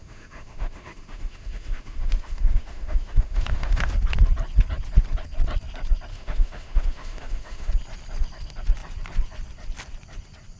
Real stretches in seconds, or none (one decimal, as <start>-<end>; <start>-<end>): 3.9-6.1; 7.7-10.6